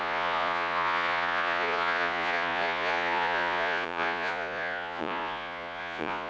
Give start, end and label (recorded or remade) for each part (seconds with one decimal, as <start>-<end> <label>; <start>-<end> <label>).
0.0-6.3 remade